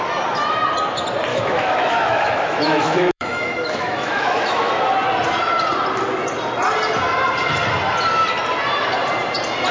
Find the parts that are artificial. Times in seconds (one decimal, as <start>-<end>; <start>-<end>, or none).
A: 1.3-4.7